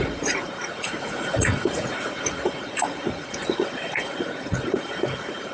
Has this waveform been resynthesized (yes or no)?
yes